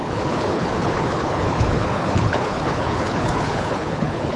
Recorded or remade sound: remade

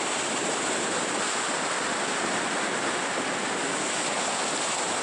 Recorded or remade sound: recorded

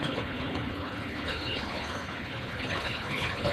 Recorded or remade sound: remade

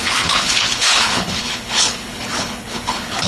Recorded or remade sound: remade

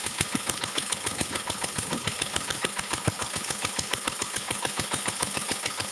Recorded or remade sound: remade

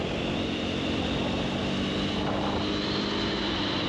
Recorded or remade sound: recorded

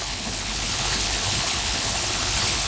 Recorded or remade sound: remade